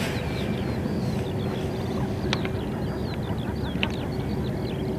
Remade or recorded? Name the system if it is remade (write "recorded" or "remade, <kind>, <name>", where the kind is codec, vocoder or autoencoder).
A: recorded